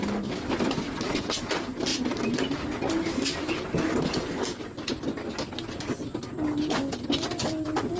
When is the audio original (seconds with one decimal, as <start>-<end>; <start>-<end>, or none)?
0.0-8.0

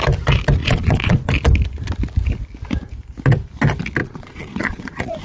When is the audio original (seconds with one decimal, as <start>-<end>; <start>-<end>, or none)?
0.0-0.6; 1.3-4.0

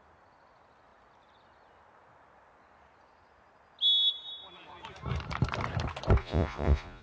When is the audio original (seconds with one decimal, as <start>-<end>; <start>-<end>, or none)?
0.0-6.2